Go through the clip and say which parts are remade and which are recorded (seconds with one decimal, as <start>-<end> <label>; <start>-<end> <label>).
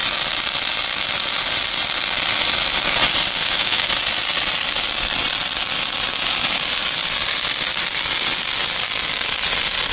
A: 0.0-3.4 recorded; 3.4-3.9 remade; 3.9-9.9 recorded